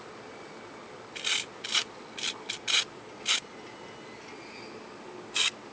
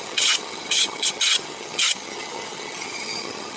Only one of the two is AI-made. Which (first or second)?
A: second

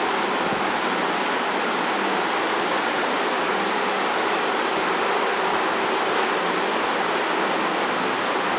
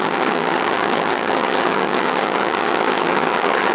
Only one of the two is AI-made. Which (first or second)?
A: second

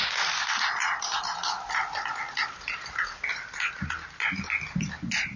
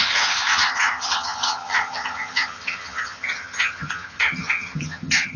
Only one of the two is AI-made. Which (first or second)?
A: second